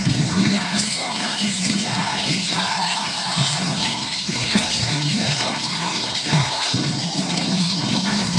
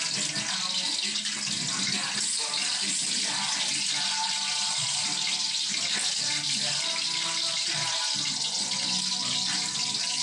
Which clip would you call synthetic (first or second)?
first